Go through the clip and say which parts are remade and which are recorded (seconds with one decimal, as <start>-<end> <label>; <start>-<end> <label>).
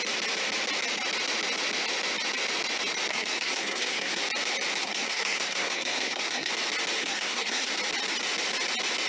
0.0-3.1 recorded; 3.1-4.2 remade; 4.2-4.8 recorded; 4.8-6.5 remade; 6.5-7.0 recorded; 7.0-7.7 remade; 7.7-9.1 recorded